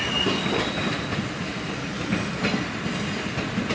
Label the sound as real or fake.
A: real